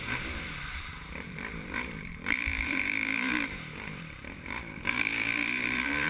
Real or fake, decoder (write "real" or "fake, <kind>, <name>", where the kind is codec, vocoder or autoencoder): fake, vocoder, BigVGAN v2